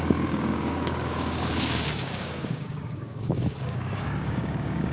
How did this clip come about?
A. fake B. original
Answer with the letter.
A